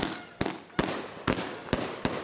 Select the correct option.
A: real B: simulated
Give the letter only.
A